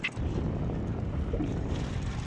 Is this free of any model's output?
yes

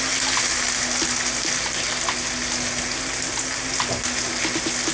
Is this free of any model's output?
yes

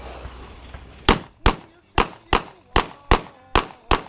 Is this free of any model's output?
yes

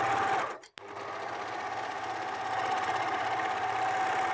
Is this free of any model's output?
yes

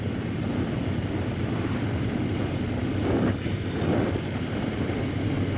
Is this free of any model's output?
no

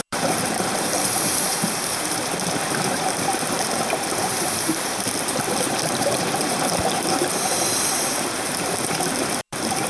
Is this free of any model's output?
no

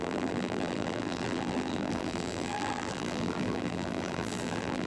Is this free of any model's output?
no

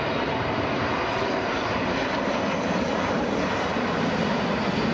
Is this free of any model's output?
yes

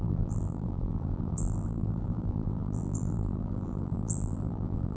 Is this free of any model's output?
no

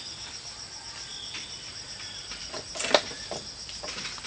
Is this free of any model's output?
yes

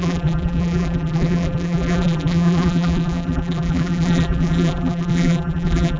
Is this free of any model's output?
no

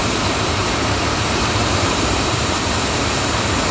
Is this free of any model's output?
no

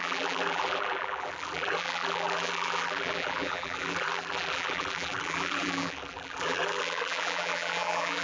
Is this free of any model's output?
no